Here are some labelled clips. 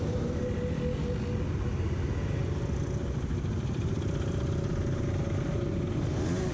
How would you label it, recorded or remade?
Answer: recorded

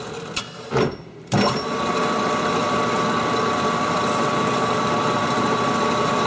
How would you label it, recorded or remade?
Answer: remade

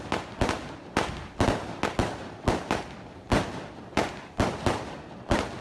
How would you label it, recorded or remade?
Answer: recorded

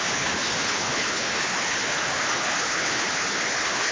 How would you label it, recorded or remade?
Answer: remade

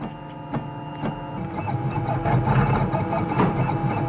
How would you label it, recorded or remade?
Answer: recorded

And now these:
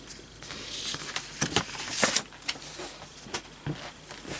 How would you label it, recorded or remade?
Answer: recorded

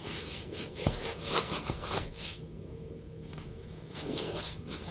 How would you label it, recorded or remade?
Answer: remade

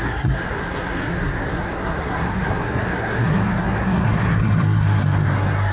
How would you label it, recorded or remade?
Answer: remade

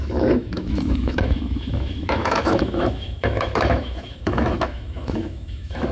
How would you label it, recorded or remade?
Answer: remade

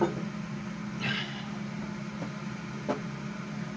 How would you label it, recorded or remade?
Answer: recorded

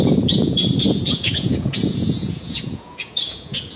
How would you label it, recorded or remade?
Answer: remade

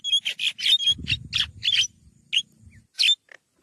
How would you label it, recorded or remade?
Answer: recorded